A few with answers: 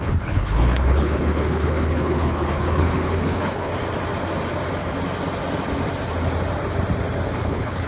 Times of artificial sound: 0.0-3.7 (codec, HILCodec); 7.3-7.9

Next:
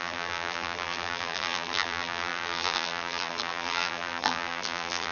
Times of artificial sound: 0.0-5.1 (vocoder, BigVGAN v2)

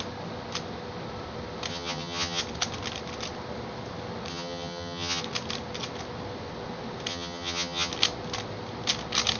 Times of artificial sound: 1.7-2.4 (vocoder, HiFi-GAN); 4.3-5.2; 7.1-7.9